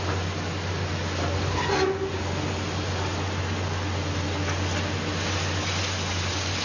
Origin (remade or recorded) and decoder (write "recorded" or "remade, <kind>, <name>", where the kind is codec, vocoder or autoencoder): recorded